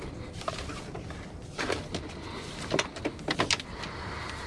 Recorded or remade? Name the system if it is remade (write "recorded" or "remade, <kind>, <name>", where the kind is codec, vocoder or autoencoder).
recorded